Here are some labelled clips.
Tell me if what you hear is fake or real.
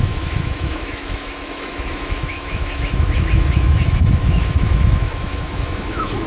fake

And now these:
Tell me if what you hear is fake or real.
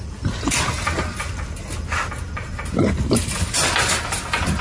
real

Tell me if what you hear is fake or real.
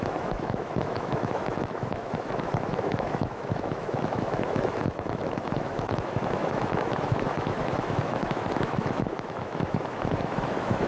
fake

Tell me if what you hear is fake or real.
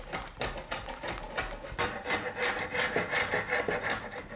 real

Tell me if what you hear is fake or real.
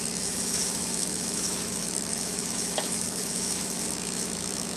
fake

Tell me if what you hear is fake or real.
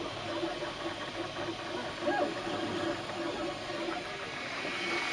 real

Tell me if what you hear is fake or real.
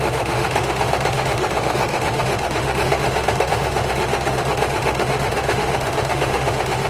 fake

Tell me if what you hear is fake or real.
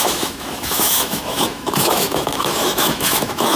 fake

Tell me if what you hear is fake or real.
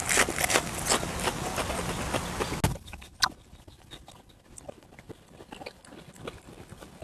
real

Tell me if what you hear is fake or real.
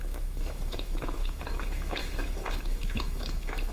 fake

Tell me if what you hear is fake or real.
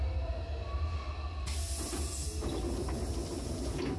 real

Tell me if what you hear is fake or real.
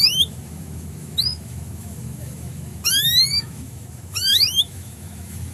fake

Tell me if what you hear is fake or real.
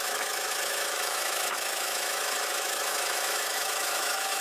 fake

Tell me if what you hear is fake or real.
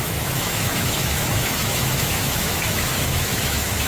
fake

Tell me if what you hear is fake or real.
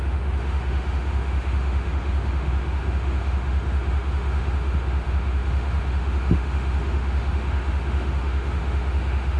fake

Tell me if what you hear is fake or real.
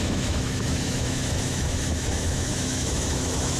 fake